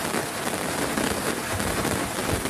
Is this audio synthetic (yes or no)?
no